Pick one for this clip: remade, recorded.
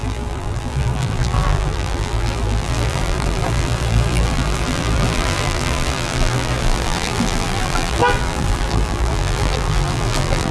remade